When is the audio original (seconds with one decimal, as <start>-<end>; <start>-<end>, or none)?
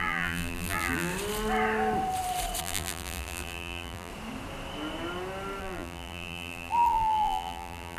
1.1-2.6; 4.1-5.6